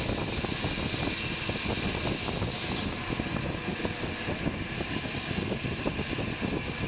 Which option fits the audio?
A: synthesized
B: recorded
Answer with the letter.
B